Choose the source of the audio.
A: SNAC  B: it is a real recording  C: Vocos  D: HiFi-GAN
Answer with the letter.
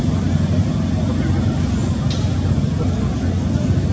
B